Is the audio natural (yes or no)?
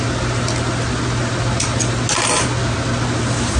yes